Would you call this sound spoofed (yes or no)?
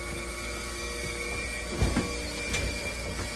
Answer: no